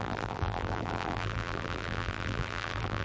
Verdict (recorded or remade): remade